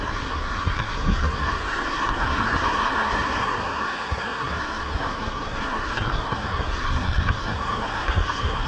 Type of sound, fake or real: fake